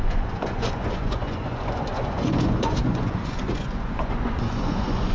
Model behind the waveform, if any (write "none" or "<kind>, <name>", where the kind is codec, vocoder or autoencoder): vocoder, Vocos